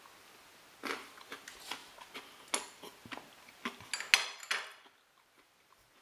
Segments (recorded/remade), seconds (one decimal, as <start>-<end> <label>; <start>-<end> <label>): 0.0-6.0 recorded